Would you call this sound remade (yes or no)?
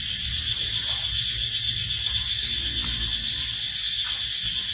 no